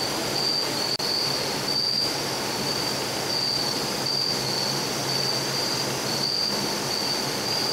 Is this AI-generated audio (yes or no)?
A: no